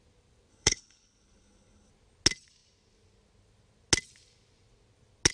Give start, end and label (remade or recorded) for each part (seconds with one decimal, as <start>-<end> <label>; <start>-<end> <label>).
0.0-0.5 recorded; 0.5-1.9 remade; 1.9-5.3 recorded